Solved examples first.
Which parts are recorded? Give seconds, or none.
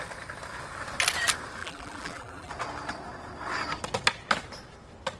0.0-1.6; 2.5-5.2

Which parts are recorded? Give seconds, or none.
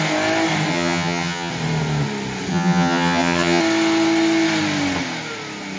0.0-0.7; 1.5-2.5; 3.6-5.8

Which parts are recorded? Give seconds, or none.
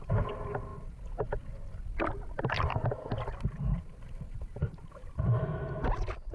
0.0-6.3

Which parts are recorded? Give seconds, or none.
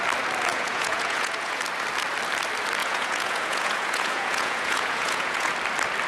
0.0-0.5; 1.6-2.8; 5.5-6.1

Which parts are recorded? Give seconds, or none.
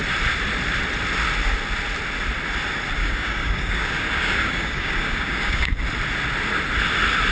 0.0-3.0; 5.7-7.3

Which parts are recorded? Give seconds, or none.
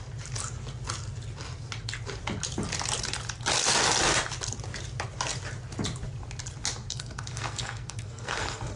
0.0-6.8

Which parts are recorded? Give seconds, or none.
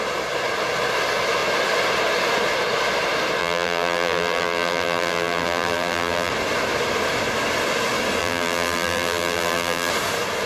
0.0-3.4; 6.3-8.2; 9.9-10.5